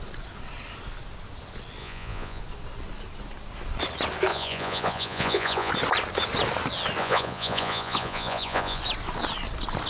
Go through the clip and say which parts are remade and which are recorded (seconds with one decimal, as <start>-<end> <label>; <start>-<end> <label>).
0.0-1.8 recorded; 1.8-2.4 remade; 2.4-4.3 recorded; 4.3-5.7 remade; 5.7-7.0 recorded; 7.0-8.8 remade; 8.8-9.9 recorded